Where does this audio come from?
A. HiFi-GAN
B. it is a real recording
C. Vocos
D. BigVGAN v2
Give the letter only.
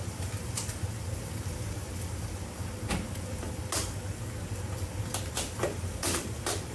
B